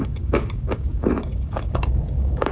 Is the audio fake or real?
fake